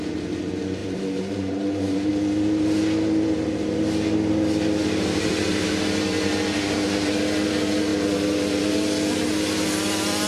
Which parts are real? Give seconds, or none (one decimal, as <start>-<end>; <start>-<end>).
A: 0.0-0.8; 2.1-10.3